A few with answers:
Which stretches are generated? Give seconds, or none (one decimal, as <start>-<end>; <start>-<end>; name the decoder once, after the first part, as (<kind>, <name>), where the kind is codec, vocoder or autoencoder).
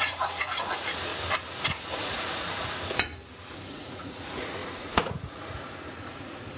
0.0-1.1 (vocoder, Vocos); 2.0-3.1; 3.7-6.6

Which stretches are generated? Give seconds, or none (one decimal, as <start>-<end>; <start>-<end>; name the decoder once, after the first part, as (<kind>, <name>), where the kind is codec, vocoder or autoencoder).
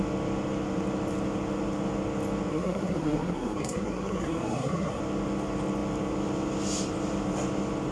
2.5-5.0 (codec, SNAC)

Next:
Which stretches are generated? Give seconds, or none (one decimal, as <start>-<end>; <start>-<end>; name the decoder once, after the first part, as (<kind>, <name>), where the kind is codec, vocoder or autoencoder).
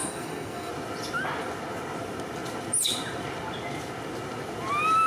0.0-0.7 (codec, SNAC)